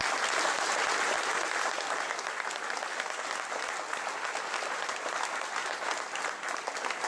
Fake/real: real